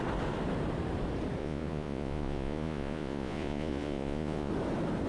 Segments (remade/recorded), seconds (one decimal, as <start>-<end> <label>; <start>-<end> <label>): 0.0-1.4 recorded; 1.4-4.5 remade; 4.5-5.1 recorded

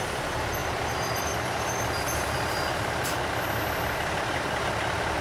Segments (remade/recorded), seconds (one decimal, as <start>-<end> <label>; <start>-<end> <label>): 0.0-0.6 recorded; 0.6-3.3 remade; 3.3-5.2 recorded

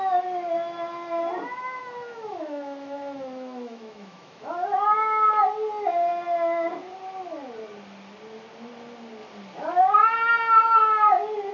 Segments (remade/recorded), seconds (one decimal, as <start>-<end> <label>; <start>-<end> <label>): 0.0-1.8 recorded; 1.8-4.5 remade; 4.5-11.5 recorded

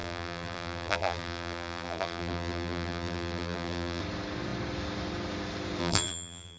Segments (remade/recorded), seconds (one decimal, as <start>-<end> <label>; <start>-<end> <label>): 0.0-4.0 remade; 4.0-5.8 recorded; 5.8-6.6 remade

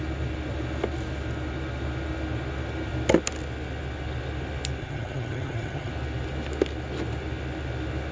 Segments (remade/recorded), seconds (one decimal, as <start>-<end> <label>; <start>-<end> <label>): 0.0-4.8 recorded; 4.8-5.9 remade; 5.9-8.1 recorded

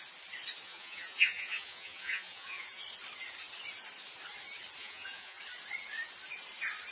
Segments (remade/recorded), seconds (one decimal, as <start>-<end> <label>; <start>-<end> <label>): 0.0-0.6 recorded; 0.6-2.8 remade; 2.8-4.8 recorded; 4.8-5.4 remade; 5.4-6.9 recorded

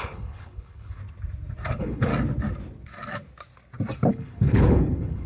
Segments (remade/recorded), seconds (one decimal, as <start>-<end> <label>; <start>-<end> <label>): 0.0-1.0 remade; 1.0-1.7 recorded; 1.7-2.1 remade; 2.1-4.1 recorded; 4.1-5.3 remade